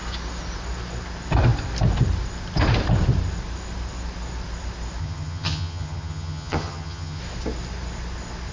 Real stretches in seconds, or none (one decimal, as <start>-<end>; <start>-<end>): 0.0-5.0; 7.2-8.5